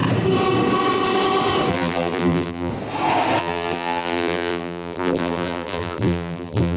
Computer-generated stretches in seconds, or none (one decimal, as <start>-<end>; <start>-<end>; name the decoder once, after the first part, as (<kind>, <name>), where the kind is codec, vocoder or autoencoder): 1.7-2.7 (vocoder, BigVGAN v2); 3.4-6.8